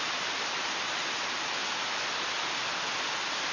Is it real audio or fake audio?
real